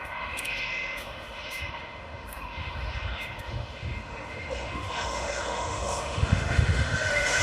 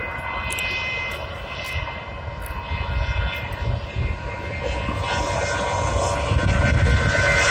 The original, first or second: second